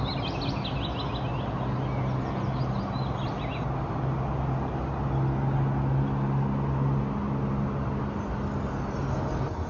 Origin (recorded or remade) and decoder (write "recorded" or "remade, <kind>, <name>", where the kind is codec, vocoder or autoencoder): recorded